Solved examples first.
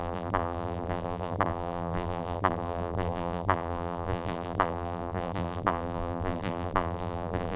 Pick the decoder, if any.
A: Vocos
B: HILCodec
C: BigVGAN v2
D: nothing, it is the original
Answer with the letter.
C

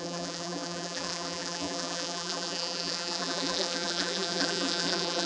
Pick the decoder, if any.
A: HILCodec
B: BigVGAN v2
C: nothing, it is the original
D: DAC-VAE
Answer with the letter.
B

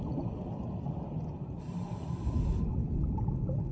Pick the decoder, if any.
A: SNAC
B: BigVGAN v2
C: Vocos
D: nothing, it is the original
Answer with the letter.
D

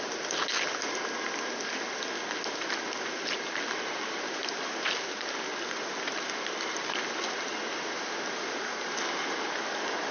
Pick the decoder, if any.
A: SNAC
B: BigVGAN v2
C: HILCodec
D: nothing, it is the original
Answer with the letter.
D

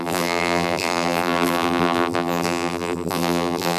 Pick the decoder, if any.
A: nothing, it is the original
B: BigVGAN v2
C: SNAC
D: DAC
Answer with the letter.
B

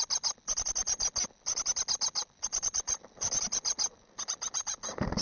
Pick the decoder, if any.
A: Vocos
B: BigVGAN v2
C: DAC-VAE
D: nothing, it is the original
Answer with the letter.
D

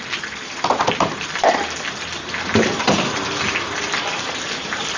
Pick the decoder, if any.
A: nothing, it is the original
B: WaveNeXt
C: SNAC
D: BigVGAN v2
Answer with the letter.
D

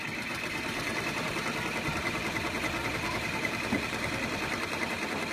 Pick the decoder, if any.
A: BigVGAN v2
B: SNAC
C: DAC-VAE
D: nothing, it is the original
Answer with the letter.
A